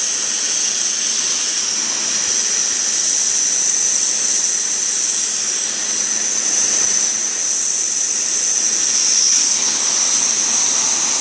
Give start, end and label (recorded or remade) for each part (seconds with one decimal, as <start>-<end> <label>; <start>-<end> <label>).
0.0-9.3 recorded; 9.3-9.8 remade; 9.8-11.2 recorded